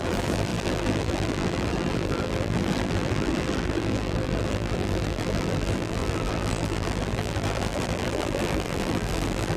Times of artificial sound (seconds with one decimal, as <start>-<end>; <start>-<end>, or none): 0.0-9.6